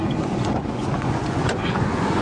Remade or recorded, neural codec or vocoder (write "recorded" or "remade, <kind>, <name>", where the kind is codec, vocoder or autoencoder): remade, vocoder, Vocos